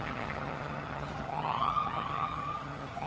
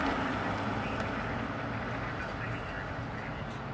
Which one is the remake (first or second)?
first